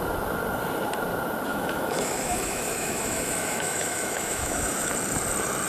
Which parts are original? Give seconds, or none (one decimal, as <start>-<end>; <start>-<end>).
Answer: 0.0-1.5; 4.9-5.7